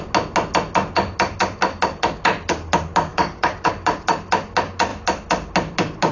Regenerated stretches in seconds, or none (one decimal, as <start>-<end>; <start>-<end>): 3.1-3.7